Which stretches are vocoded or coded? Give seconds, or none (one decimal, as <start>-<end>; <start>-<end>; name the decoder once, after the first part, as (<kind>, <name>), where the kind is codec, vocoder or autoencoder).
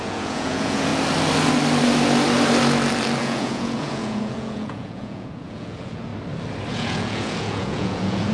0.0-0.9 (vocoder, Vocos); 3.2-6.1; 6.7-8.3